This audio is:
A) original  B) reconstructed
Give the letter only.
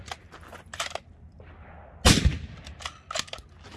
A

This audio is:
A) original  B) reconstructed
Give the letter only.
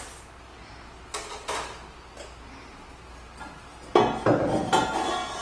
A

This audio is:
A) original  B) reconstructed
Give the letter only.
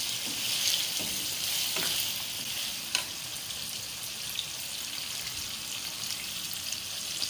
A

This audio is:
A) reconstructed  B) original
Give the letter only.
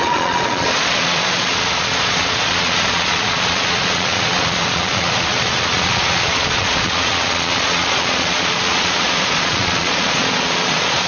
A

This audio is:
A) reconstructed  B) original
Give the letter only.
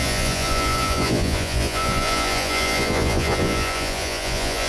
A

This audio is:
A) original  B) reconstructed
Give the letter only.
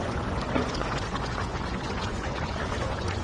B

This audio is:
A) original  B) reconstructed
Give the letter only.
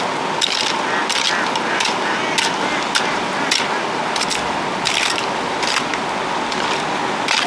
A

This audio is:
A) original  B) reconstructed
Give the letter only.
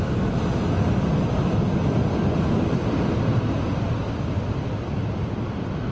A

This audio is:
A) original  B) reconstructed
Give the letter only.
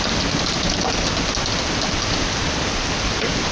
A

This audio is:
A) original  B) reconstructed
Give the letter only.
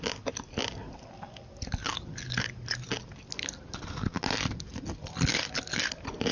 A